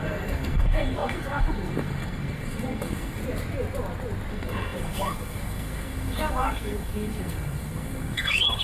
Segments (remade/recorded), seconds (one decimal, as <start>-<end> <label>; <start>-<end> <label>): 0.0-3.2 remade; 3.2-4.3 recorded; 4.3-8.6 remade